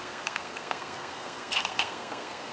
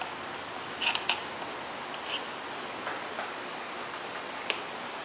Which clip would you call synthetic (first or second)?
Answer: first